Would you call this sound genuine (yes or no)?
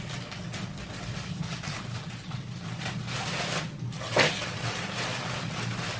yes